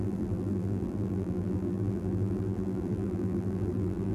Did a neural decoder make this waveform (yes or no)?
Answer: yes